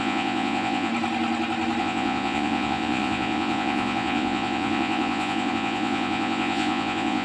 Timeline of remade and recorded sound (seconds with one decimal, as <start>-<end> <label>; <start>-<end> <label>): 0.0-0.9 remade; 0.9-1.8 recorded; 1.8-7.2 remade